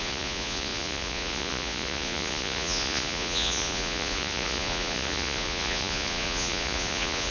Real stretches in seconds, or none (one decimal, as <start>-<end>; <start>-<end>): none